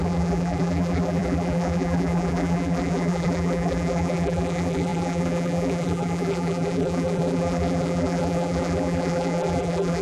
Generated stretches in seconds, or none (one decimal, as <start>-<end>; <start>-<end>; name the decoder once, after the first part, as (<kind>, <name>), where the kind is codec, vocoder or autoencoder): 0.0-10.0 (vocoder, BigVGAN v2)